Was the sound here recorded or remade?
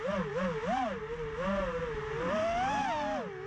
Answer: recorded